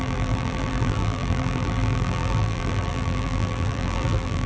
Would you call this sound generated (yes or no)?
yes